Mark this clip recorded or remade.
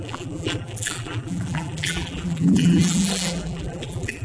remade